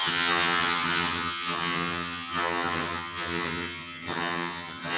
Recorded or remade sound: remade